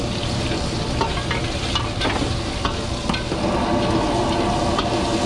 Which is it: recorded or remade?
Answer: recorded